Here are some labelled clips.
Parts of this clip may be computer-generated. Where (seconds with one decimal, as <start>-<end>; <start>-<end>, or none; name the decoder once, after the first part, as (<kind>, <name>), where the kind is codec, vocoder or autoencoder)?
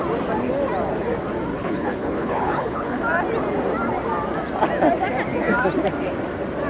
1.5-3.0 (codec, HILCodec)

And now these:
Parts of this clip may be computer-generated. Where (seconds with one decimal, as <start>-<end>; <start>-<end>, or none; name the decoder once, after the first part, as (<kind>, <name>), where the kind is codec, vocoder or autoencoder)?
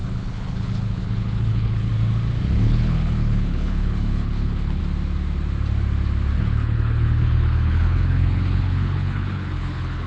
0.0-1.9 (codec, HILCodec); 2.6-4.8; 6.4-10.1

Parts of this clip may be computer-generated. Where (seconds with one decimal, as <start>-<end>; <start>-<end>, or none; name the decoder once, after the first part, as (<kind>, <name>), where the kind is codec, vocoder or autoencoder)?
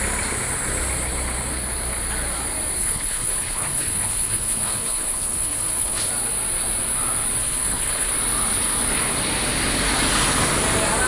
2.8-6.0 (codec, HILCodec); 7.4-8.1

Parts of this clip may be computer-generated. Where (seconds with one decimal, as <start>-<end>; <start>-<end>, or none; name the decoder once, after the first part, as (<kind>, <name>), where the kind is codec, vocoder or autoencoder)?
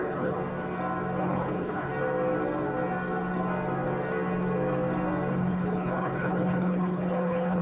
0.0-0.4 (codec, HILCodec); 1.2-1.9; 5.3-7.6